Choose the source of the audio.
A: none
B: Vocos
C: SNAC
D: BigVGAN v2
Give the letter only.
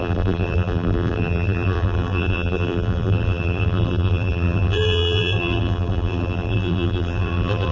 D